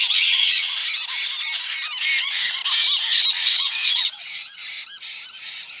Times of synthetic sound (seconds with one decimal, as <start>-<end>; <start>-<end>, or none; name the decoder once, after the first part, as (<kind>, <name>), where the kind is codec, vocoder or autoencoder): 0.0-0.8 (vocoder, WaveNeXt); 2.2-2.6; 3.3-4.6